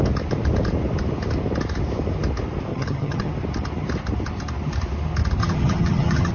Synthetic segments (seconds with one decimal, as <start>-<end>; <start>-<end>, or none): 2.7-3.3; 5.4-6.3